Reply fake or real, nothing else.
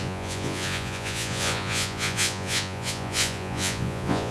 fake